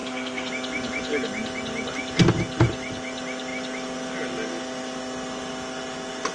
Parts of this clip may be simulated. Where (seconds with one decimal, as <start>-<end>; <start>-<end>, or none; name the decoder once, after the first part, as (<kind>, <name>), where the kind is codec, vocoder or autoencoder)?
0.0-0.5 (codec, SNAC)